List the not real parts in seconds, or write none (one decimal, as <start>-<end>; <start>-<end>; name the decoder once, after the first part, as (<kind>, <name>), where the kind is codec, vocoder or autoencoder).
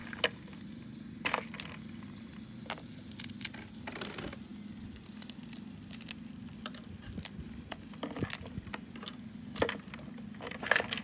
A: none